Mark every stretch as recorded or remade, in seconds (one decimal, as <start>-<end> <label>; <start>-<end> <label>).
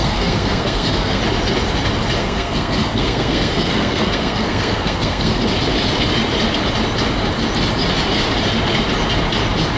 0.0-1.2 remade; 1.2-2.2 recorded; 2.2-5.4 remade; 5.4-9.8 recorded